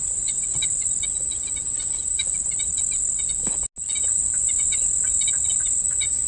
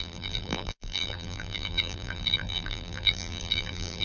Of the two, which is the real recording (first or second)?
first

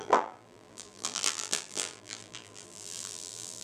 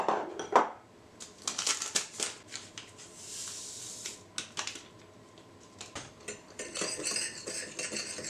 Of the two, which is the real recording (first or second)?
second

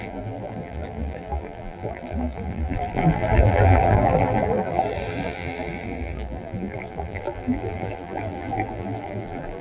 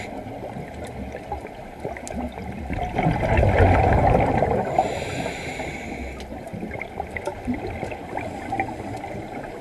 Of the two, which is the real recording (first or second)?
second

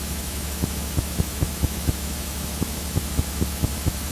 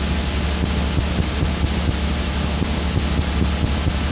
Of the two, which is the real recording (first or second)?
second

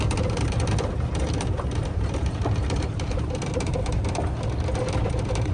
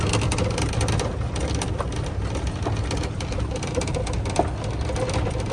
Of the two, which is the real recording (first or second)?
second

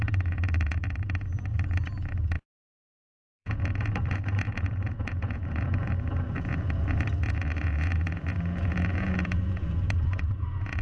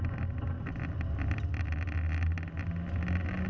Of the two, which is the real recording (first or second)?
second